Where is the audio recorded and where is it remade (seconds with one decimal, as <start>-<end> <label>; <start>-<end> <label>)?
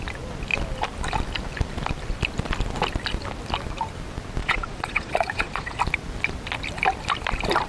0.0-4.4 recorded; 4.4-5.8 remade; 5.8-7.7 recorded